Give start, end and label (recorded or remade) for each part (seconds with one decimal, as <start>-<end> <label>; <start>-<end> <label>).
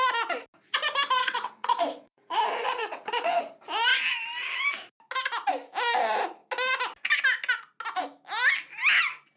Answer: 0.0-1.2 recorded; 1.2-3.4 remade; 3.4-9.4 recorded